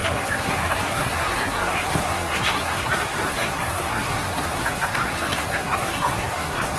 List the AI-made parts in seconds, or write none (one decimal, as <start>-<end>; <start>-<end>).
0.0-6.8

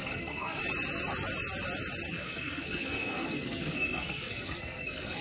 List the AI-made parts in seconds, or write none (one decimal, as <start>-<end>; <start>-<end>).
0.0-0.6; 2.1-5.2

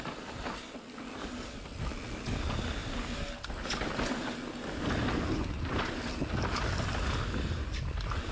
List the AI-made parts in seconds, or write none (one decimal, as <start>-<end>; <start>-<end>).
none

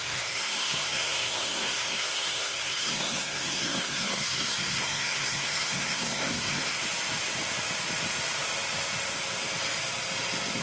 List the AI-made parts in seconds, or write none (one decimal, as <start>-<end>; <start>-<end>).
0.0-6.8

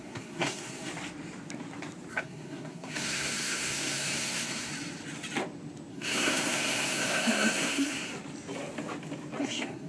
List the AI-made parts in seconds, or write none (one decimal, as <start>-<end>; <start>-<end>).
0.0-0.9; 2.1-4.7; 5.9-8.1; 9.4-9.9

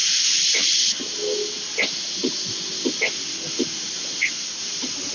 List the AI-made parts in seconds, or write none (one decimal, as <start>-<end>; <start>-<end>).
none